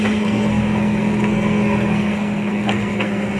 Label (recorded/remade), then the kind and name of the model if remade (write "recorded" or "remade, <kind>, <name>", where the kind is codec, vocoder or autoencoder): remade, codec, SNAC